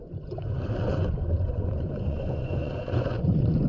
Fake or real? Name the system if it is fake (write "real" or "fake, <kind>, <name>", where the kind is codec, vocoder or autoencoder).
fake, vocoder, Vocos